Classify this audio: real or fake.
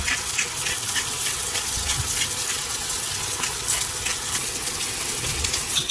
fake